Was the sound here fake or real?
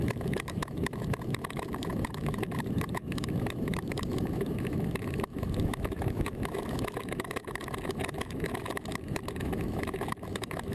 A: fake